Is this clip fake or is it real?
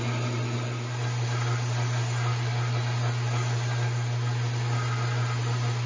real